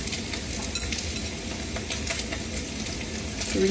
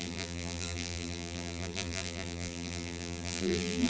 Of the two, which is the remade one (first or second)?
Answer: second